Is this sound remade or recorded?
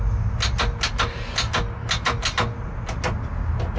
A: recorded